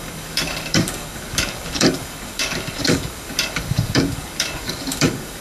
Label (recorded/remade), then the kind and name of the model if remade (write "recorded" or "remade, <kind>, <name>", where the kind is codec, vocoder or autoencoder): remade, codec, DAC